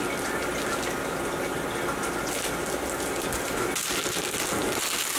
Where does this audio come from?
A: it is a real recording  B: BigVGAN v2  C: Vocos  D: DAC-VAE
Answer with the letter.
A